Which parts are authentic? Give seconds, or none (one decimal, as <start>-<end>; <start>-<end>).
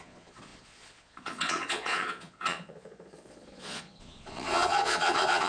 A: none